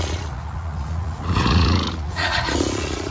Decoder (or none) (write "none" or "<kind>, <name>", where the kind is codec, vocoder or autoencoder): vocoder, Vocos